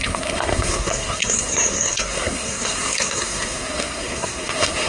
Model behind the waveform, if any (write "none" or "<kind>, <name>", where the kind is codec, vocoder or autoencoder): codec, SNAC